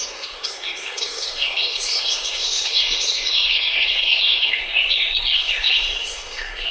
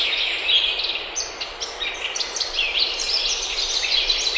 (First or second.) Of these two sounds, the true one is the second